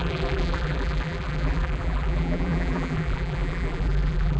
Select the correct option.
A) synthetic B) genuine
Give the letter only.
A